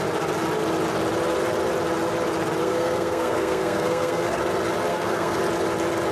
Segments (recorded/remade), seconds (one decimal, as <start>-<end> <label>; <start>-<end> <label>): 0.0-2.6 recorded; 2.6-4.4 remade; 4.4-4.9 recorded; 4.9-5.4 remade; 5.4-6.1 recorded

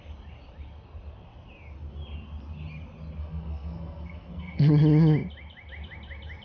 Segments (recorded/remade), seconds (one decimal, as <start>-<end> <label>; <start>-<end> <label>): 0.0-3.2 recorded; 3.2-4.7 remade; 4.7-6.4 recorded

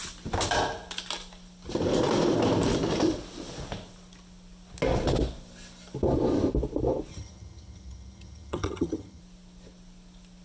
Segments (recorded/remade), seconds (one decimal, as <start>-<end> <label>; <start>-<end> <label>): 0.0-7.1 recorded; 7.1-9.2 remade; 9.2-10.4 recorded

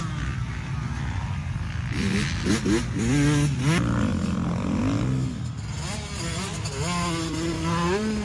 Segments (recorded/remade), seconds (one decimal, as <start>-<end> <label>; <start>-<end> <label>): 0.0-8.2 recorded

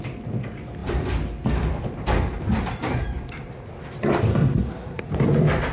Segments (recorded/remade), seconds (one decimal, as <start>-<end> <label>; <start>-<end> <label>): 0.0-4.3 recorded; 4.3-5.0 remade; 5.0-5.7 recorded

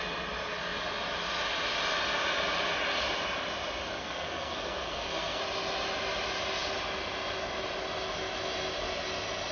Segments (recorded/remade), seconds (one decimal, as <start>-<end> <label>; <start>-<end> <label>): 0.0-4.0 recorded; 4.0-5.4 remade; 5.4-9.5 recorded

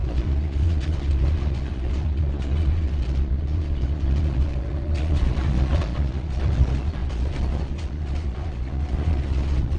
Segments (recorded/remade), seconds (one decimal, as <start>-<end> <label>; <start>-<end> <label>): 0.0-9.8 remade